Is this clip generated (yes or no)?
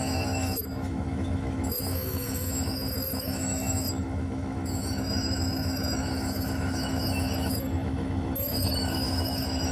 yes